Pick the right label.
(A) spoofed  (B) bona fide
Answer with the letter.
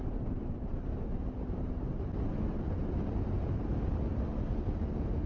B